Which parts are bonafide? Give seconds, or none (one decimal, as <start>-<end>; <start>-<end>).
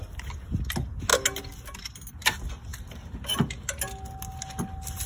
0.0-5.1